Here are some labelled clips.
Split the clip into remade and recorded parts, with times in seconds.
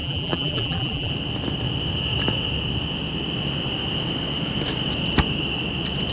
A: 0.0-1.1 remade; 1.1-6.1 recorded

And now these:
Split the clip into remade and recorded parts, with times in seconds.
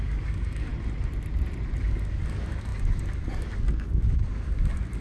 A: 0.0-0.7 remade; 0.7-1.8 recorded; 1.8-5.0 remade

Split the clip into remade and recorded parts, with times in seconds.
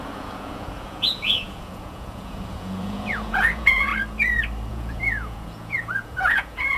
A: 0.0-3.9 remade; 3.9-4.7 recorded; 4.7-6.8 remade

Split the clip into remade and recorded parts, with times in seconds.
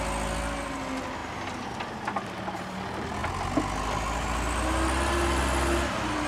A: 0.0-6.3 recorded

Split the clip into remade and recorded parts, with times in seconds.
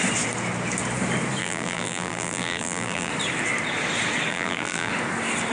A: 0.0-1.4 recorded; 1.4-3.1 remade; 3.1-4.3 recorded; 4.3-4.9 remade; 4.9-5.5 recorded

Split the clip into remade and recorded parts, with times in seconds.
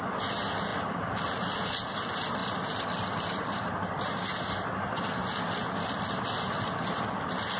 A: 0.0-7.6 recorded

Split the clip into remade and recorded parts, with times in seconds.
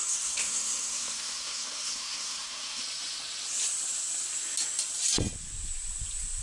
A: 0.0-2.8 remade; 2.8-6.4 recorded